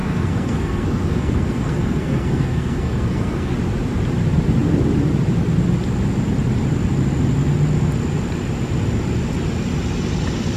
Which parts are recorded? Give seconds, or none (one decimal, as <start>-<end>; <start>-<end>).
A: 3.5-10.6